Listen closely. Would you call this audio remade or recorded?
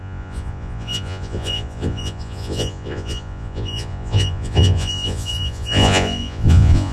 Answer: remade